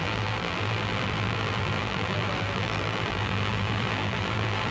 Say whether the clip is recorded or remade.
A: remade